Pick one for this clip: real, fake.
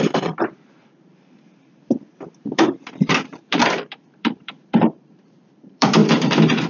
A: fake